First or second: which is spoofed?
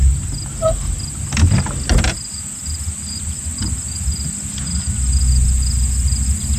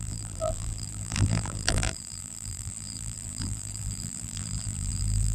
second